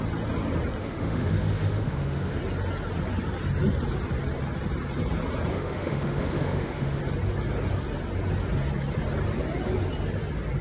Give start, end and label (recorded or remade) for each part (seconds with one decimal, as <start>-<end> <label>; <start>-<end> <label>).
0.0-0.8 recorded; 0.8-2.4 remade; 2.4-5.5 recorded; 5.5-7.0 remade; 7.0-10.6 recorded